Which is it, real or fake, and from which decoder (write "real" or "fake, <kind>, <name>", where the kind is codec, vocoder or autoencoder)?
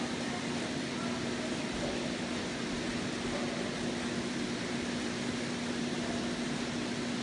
real